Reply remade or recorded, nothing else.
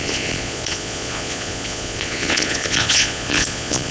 remade